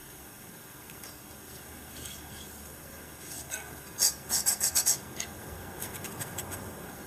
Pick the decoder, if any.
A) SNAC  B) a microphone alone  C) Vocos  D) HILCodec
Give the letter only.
A